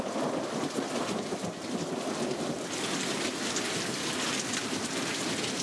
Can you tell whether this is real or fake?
real